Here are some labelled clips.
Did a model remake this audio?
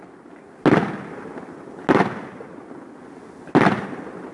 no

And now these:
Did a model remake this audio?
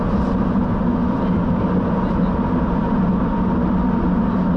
no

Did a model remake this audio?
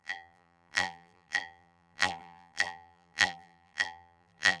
yes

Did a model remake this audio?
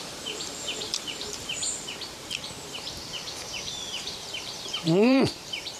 yes